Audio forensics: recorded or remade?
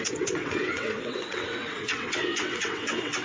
remade